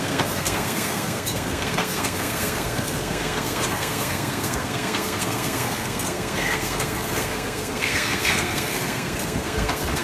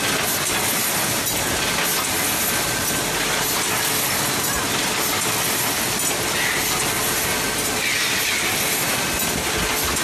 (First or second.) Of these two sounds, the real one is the second